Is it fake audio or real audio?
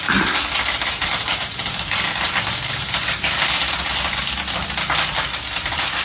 real